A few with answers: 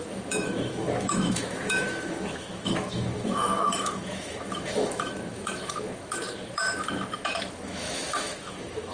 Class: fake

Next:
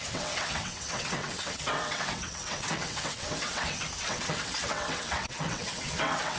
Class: fake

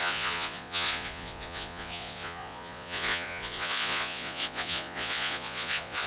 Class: fake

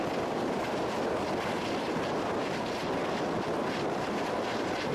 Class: real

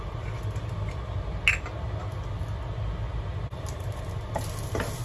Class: real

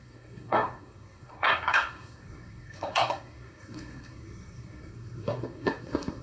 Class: fake